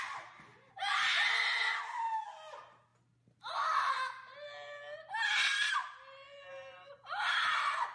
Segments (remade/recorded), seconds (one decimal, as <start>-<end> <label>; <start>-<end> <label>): 0.0-7.9 recorded